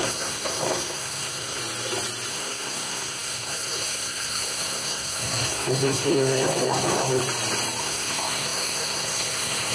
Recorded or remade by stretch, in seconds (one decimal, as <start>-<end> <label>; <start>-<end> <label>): 0.0-1.6 remade; 1.6-2.3 recorded; 2.3-7.2 remade; 7.2-7.8 recorded; 7.8-9.7 remade